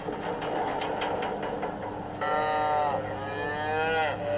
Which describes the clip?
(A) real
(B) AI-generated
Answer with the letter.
A